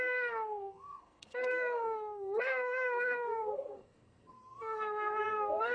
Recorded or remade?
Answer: remade